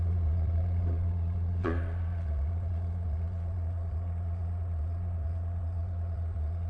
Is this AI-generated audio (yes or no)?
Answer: yes